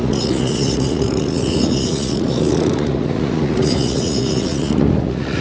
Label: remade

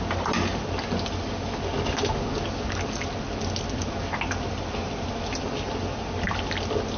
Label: recorded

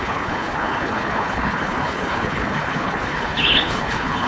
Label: remade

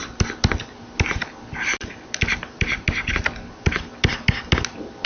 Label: recorded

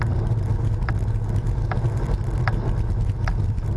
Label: recorded